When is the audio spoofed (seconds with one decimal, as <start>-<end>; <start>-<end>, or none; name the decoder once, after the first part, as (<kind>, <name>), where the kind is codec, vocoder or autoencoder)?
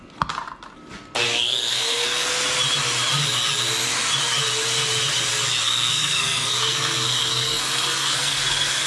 1.2-2.3 (codec, SNAC); 5.6-8.9